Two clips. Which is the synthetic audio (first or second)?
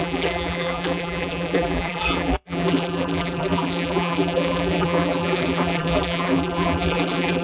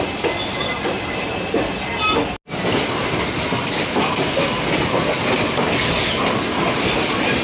first